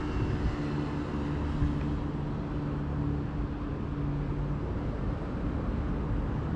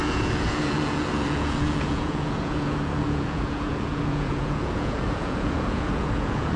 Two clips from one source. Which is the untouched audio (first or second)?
first